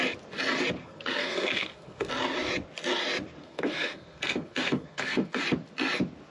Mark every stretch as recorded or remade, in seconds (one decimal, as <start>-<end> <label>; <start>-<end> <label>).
0.0-0.8 recorded; 0.8-2.1 remade; 2.1-3.4 recorded; 3.4-5.4 remade; 5.4-6.3 recorded

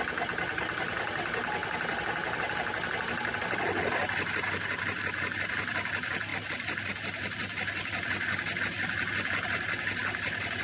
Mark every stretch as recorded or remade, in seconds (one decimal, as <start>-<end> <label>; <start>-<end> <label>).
0.0-10.6 recorded

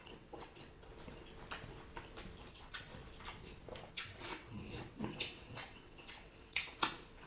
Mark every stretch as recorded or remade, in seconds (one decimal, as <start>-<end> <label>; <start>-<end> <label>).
0.0-0.9 remade; 0.9-2.5 recorded; 2.5-2.9 remade; 2.9-3.9 recorded; 3.9-7.3 remade

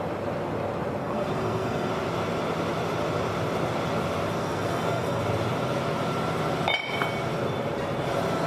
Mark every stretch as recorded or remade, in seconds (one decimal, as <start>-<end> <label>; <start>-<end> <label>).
0.0-1.0 recorded; 1.0-1.9 remade; 1.9-4.4 recorded; 4.4-5.2 remade; 5.2-8.5 recorded

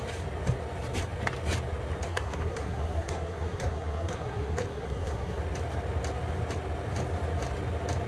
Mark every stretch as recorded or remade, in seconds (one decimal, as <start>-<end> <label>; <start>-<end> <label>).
0.0-2.1 recorded; 2.1-5.4 remade; 5.4-8.1 recorded